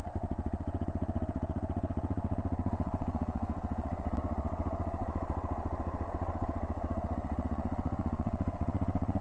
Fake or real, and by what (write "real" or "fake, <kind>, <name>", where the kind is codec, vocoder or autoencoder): fake, vocoder, WaveNeXt